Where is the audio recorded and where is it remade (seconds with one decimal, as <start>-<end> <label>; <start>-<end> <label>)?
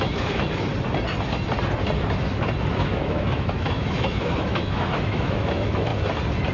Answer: 0.0-0.7 remade; 0.7-2.7 recorded; 2.7-5.9 remade; 5.9-6.5 recorded